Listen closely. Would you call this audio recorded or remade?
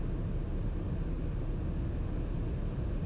recorded